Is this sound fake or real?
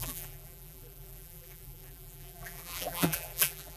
fake